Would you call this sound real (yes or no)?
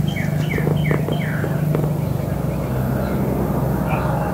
yes